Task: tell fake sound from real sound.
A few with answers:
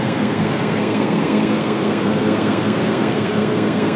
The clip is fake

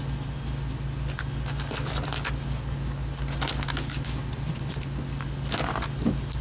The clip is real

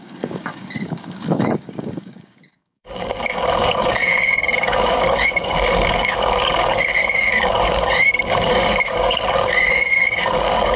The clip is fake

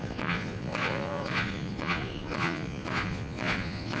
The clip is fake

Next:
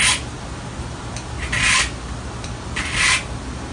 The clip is real